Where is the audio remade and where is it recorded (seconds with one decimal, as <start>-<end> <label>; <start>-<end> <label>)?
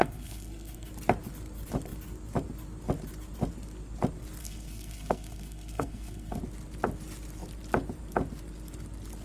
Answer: 0.0-0.9 remade; 0.9-4.4 recorded; 4.4-6.4 remade; 6.4-9.2 recorded